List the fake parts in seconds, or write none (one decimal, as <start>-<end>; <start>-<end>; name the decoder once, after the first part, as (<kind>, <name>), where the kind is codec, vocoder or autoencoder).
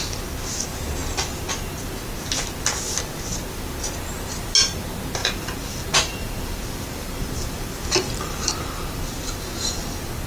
5.2-9.0 (vocoder, BigVGAN v2)